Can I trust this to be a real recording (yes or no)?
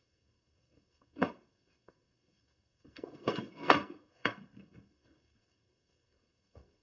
no